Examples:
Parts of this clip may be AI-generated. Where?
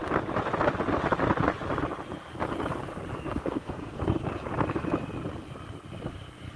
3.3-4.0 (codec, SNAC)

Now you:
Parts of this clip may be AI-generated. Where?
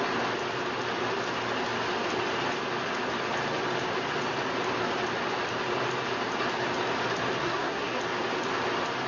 7.4-8.0 (codec, SNAC)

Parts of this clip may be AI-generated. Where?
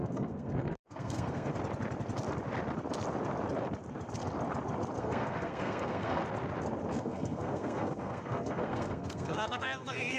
0.0-1.5 (codec, SNAC); 5.0-6.2; 6.9-10.2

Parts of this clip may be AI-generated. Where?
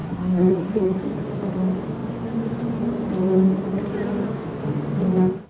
0.0-1.0 (codec, SNAC)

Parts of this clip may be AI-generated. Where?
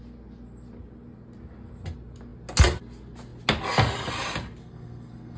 4.6-5.4 (codec, SNAC)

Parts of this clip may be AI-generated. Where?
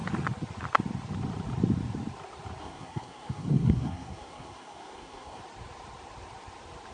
2.6-5.4 (codec, SNAC)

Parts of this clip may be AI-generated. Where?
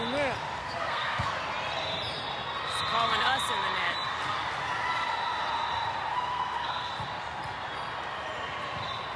0.6-1.4 (codec, SNAC); 6.1-6.9